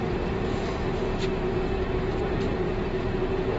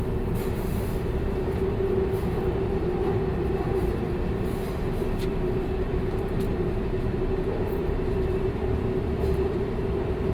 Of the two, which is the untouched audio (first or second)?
first